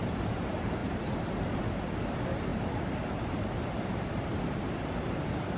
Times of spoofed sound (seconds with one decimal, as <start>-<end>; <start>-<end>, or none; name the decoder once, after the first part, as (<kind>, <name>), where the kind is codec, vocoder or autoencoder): none